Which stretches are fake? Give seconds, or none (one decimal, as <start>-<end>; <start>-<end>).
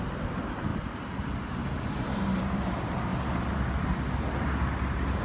0.0-0.7; 1.9-3.1